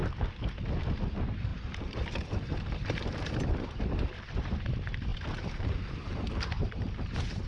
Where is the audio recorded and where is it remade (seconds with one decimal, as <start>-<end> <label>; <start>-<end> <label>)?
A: 0.0-1.1 recorded; 1.1-7.5 remade

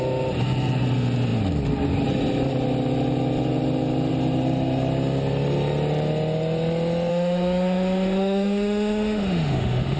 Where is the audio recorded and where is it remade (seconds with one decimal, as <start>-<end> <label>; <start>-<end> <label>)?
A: 0.0-7.1 recorded; 7.1-10.0 remade